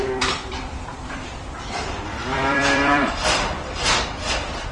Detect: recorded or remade remade